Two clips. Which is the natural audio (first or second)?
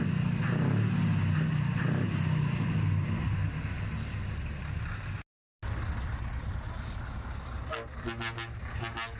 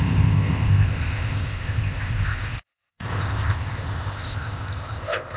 first